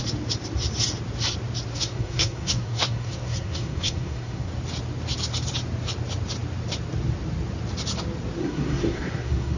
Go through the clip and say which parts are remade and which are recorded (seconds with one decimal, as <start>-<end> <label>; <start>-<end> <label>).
0.0-1.7 recorded; 1.7-4.5 remade; 4.5-8.4 recorded; 8.4-9.6 remade